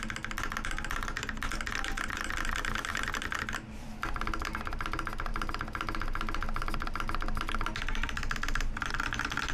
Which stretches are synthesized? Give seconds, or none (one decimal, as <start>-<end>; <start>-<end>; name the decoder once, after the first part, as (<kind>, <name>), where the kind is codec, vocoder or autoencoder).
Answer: none